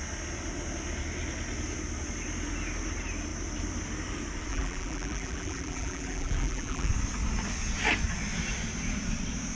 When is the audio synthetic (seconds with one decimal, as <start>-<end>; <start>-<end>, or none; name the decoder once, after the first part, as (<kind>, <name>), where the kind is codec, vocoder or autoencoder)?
4.5-6.9 (vocoder, BigVGAN v2)